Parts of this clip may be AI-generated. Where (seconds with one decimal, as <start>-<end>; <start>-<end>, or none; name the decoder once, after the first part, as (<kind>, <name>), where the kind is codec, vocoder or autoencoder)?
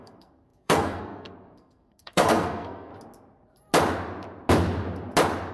0.0-2.9 (codec, SNAC)